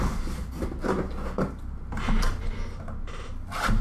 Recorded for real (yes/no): yes